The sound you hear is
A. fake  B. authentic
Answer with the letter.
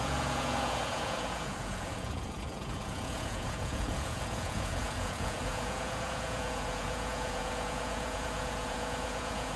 A